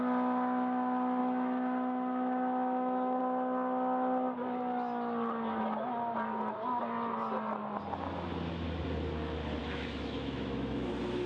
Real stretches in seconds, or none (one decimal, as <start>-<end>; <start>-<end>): 0.0-1.2; 3.2-9.6; 10.9-11.3